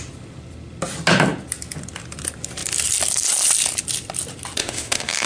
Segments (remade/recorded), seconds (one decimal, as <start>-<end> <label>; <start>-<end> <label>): 0.0-4.6 recorded; 4.6-5.3 remade